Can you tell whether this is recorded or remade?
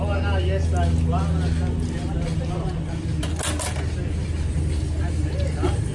recorded